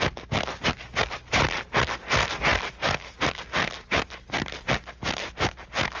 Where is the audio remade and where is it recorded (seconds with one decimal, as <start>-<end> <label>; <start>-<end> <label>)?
0.0-6.0 recorded